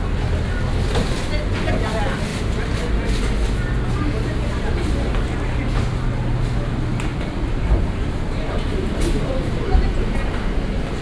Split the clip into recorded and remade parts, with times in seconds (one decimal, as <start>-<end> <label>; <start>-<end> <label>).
0.0-11.0 recorded